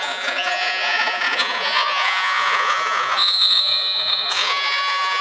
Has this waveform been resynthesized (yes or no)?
yes